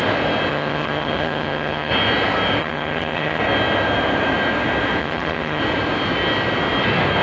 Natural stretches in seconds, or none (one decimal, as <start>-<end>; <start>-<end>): 0.0-0.5; 1.9-2.6; 3.4-5.0; 5.6-7.2